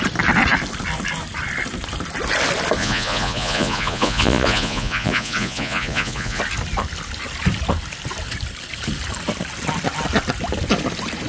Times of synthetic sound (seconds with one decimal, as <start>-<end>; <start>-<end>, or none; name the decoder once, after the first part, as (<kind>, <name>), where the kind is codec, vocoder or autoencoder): 2.8-6.4 (vocoder, Vocos)